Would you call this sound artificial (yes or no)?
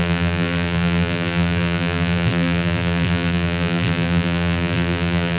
yes